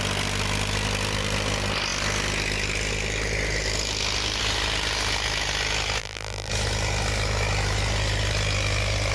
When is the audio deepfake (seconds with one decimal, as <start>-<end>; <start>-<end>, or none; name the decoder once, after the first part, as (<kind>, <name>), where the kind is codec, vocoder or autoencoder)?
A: 6.0-6.5 (vocoder, BigVGAN v2)